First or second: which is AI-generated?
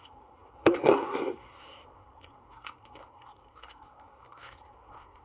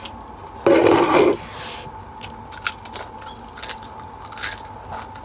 first